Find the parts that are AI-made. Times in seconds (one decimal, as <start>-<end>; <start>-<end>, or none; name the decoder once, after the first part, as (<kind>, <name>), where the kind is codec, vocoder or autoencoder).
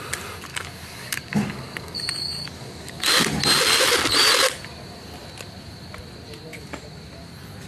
0.5-3.0 (codec, DAC)